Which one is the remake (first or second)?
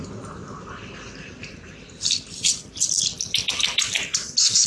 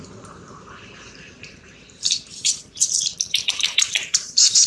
second